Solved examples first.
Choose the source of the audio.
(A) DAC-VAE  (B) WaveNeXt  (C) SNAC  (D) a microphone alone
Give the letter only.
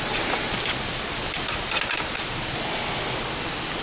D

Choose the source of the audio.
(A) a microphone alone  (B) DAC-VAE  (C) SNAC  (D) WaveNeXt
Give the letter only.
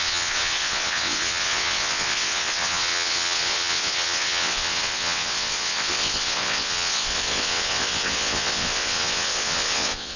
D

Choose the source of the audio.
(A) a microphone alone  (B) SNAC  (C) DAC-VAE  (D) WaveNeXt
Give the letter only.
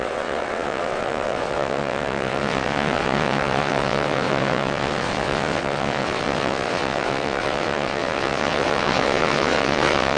D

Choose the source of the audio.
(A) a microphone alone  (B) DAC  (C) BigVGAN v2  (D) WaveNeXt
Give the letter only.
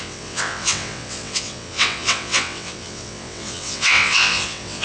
D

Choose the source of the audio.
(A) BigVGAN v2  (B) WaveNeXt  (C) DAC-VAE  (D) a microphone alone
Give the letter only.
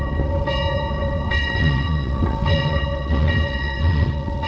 B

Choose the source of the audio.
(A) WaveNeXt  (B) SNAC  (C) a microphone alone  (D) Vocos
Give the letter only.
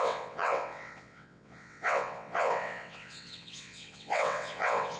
A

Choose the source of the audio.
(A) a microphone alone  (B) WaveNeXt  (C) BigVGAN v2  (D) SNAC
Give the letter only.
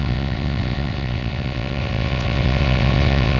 B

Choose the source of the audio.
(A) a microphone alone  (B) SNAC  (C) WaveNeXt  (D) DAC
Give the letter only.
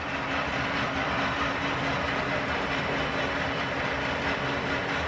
A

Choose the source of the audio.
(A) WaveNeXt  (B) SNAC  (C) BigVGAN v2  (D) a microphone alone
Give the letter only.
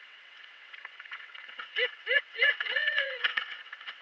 A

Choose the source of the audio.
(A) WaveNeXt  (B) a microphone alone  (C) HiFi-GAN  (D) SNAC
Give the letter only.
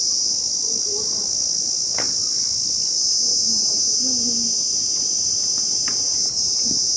B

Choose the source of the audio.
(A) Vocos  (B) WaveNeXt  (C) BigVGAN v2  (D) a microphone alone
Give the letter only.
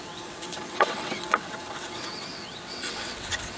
B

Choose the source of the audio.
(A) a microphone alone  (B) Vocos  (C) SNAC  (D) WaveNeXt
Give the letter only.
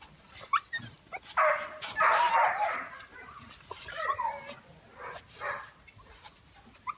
A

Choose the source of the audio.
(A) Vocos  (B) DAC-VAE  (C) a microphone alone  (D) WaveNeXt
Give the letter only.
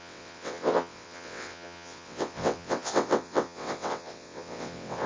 D